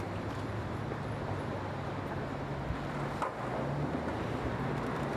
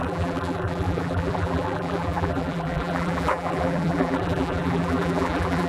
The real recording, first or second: first